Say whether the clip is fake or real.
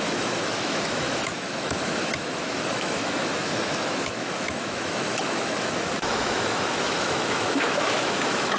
fake